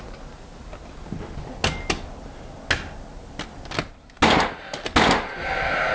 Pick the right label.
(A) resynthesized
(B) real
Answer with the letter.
B